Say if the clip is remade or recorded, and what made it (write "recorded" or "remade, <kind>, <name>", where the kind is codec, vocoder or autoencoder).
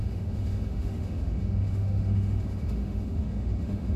remade, autoencoder, DAC-VAE